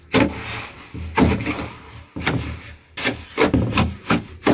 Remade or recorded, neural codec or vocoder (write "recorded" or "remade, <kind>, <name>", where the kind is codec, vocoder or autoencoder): recorded